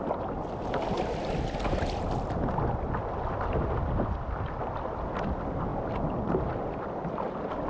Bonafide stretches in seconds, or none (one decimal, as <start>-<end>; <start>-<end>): 0.0-7.7